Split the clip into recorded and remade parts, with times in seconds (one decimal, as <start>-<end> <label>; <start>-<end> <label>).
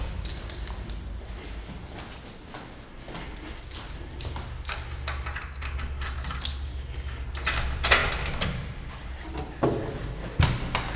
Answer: 0.0-8.0 recorded; 8.0-10.0 remade; 10.0-11.0 recorded